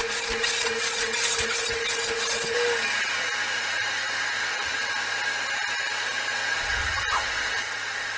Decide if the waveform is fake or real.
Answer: real